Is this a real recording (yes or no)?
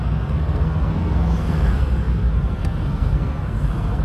no